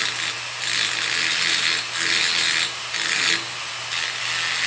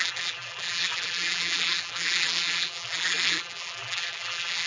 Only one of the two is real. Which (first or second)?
first